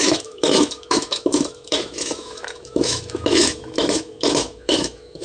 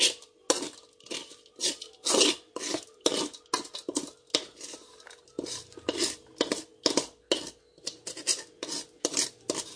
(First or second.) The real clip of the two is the second